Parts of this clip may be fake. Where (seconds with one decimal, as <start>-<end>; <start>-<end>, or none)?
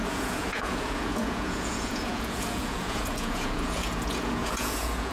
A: 0.0-5.1